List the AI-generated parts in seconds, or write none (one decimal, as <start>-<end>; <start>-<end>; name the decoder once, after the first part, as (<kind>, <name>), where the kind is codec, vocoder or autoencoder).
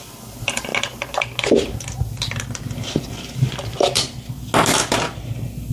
none